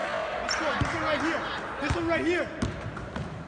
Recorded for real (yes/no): yes